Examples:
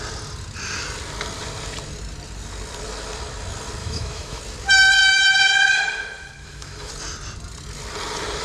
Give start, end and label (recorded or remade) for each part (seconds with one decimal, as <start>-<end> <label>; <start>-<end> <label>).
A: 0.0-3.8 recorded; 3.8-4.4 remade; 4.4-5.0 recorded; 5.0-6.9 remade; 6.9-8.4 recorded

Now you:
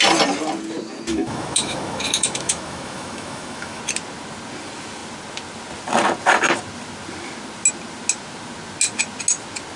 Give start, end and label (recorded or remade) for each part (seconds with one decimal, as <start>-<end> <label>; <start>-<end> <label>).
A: 0.0-1.1 recorded; 1.1-3.8 remade; 3.8-9.8 recorded

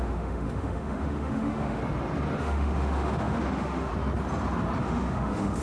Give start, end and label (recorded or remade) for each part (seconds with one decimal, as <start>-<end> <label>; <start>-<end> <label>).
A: 0.0-1.8 remade; 1.8-2.4 recorded; 2.4-3.9 remade; 3.9-4.8 recorded; 4.8-5.6 remade

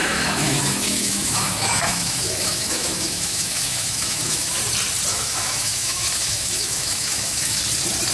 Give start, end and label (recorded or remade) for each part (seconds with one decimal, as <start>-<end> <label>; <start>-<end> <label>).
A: 0.0-4.6 remade; 4.6-5.1 recorded; 5.1-7.6 remade; 7.6-8.1 recorded

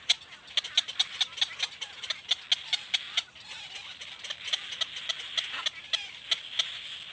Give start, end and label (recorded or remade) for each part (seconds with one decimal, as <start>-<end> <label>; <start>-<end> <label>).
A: 0.0-7.1 recorded

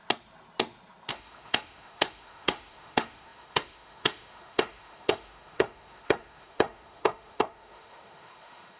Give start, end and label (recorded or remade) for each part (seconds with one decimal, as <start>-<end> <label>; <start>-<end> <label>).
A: 0.0-1.1 recorded; 1.1-8.8 remade

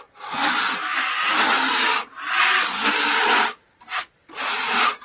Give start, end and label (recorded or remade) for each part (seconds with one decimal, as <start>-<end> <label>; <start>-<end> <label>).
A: 0.0-5.0 recorded

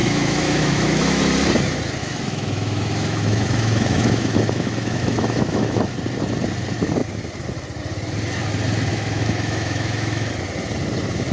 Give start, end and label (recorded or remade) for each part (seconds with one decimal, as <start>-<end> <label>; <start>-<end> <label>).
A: 0.0-1.2 remade; 1.2-2.0 recorded; 2.0-5.9 remade; 5.9-8.9 recorded; 8.9-10.3 remade; 10.3-11.3 recorded